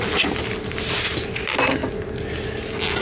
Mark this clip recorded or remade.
recorded